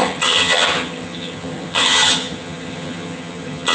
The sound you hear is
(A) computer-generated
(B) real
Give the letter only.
A